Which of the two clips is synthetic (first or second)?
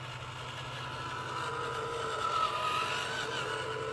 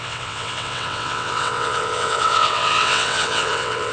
second